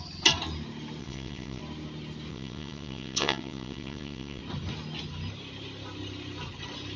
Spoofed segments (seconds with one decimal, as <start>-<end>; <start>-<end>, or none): 1.0-1.6; 2.3-4.4